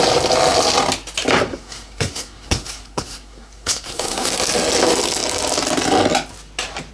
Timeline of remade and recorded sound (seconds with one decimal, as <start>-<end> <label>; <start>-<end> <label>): 0.0-1.5 recorded; 1.5-4.3 remade; 4.3-6.9 recorded